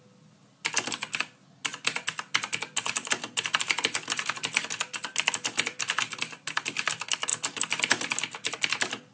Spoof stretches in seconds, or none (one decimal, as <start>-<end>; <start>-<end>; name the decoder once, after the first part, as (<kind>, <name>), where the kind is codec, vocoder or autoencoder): none